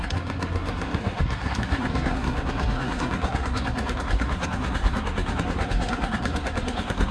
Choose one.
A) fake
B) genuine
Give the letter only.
A